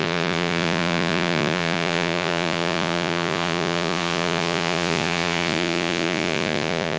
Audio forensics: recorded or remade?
remade